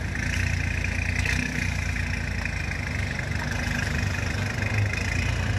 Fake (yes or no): no